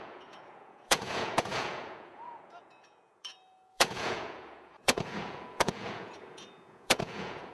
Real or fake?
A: fake